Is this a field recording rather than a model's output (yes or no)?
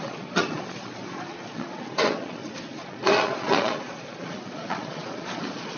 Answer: no